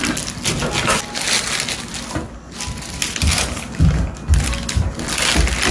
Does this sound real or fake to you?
real